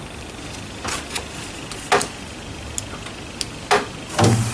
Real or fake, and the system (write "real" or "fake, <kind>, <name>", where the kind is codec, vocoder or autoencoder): real